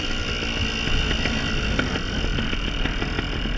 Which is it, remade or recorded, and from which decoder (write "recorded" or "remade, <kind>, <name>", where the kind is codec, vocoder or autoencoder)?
recorded